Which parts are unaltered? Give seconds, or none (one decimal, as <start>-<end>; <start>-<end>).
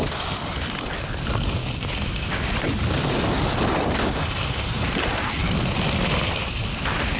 0.0-1.6; 2.5-7.2